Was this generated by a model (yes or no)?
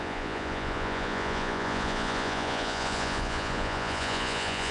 yes